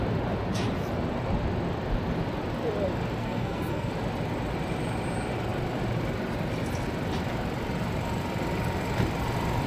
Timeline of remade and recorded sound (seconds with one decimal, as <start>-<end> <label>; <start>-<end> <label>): 0.0-3.2 recorded; 3.2-3.9 remade; 3.9-9.7 recorded